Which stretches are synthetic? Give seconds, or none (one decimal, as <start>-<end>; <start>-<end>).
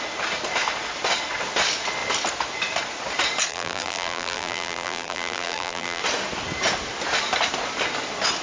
3.5-6.0